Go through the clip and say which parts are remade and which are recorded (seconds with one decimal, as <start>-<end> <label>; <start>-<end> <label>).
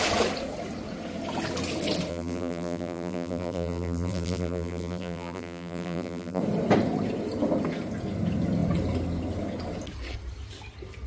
0.0-2.1 recorded; 2.1-6.4 remade; 6.4-11.1 recorded